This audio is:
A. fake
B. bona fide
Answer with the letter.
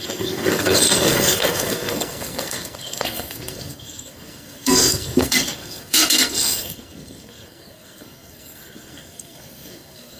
A